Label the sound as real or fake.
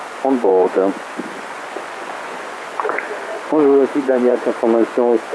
fake